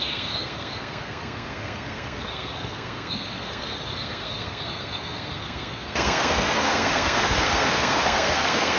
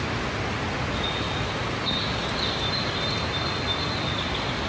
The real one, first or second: second